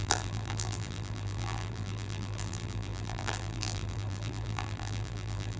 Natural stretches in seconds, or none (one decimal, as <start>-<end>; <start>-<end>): none